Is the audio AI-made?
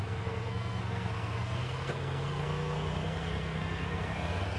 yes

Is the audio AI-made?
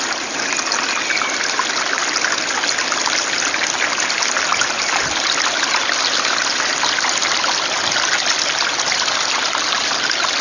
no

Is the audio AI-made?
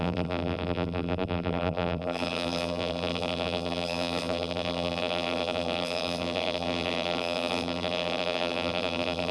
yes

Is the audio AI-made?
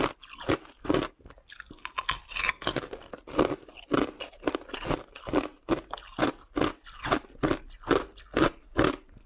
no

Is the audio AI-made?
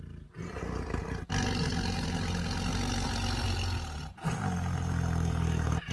no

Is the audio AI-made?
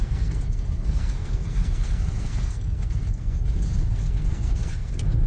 yes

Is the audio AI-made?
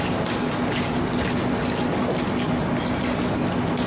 no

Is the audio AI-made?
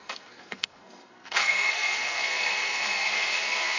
yes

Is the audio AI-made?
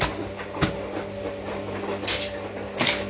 no